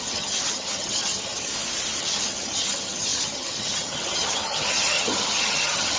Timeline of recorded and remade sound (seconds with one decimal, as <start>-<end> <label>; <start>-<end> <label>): 0.0-1.5 remade; 1.5-2.0 recorded; 2.0-6.0 remade